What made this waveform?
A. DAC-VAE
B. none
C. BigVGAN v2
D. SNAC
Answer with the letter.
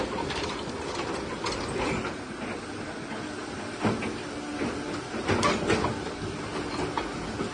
B